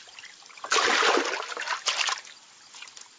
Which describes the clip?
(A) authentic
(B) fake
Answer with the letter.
A